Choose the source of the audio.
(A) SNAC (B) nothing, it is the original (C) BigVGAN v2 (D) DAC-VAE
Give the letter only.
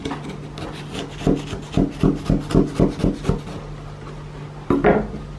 B